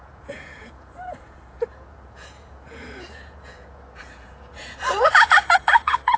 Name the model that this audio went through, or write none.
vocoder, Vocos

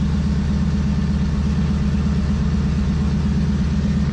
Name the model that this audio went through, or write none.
none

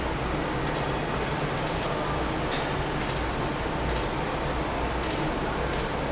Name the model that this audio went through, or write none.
none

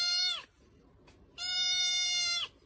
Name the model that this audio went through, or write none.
none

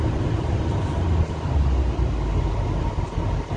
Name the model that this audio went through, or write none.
none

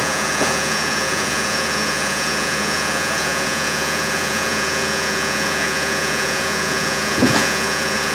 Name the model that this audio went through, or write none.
vocoder, Vocos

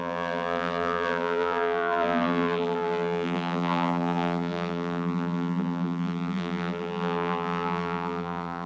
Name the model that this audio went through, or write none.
vocoder, BigVGAN v2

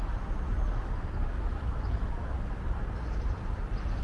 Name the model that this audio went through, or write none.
none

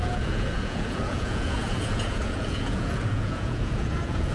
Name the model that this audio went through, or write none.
vocoder, Vocos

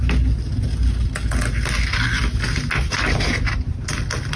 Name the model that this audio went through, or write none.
none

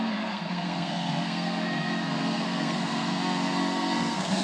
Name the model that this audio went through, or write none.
codec, SNAC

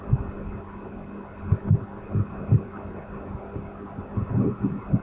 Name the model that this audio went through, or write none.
none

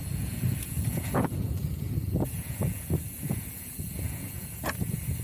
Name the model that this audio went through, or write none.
vocoder, Vocos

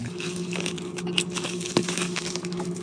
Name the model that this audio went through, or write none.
codec, DAC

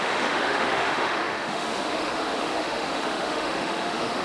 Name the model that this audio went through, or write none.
autoencoder, DAC-VAE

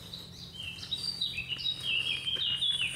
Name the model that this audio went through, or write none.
none